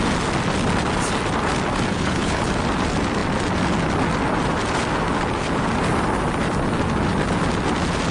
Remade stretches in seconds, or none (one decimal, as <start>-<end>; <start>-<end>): 1.9-2.5